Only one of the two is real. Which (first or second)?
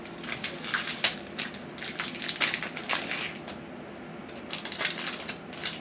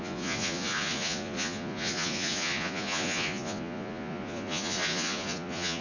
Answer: first